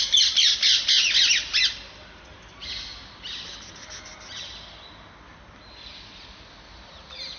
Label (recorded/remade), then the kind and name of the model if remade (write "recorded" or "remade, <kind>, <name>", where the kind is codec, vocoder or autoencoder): recorded